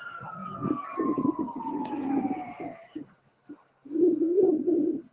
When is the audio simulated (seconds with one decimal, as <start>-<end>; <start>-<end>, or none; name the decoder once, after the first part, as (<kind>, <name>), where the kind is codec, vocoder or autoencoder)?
none